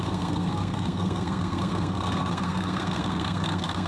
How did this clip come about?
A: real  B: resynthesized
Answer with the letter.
B